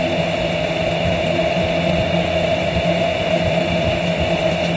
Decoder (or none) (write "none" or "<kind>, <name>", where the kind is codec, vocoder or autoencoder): none